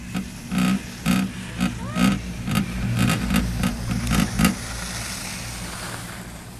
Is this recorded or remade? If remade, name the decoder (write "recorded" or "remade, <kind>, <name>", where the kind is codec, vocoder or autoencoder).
recorded